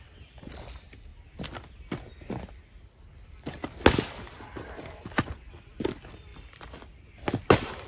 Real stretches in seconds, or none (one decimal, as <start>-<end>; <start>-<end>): 0.0-7.9